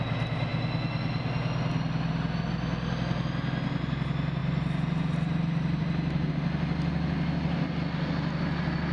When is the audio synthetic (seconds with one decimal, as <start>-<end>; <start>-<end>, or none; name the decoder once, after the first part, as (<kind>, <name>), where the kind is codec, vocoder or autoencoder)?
4.4-6.3 (vocoder, BigVGAN v2)